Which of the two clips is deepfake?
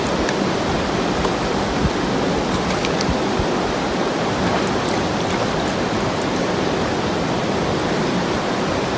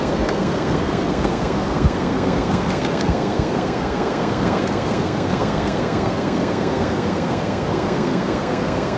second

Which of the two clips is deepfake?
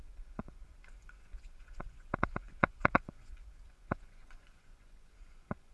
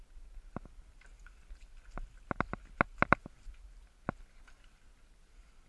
first